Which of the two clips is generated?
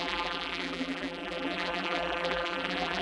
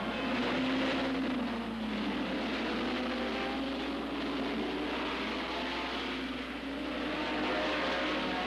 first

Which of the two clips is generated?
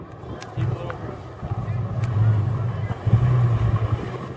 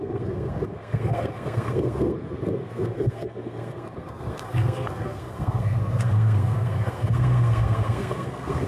second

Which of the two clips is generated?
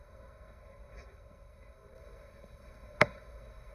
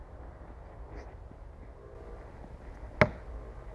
first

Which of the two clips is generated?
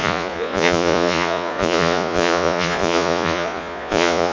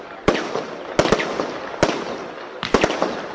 first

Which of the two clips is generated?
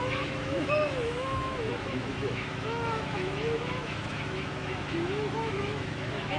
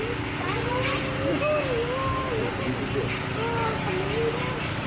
first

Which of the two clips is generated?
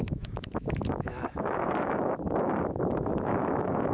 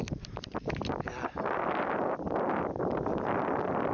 first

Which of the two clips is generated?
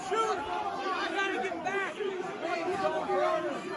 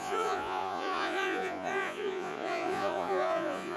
second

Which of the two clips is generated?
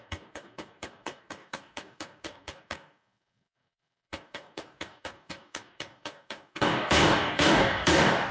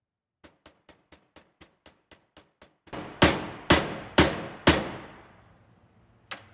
first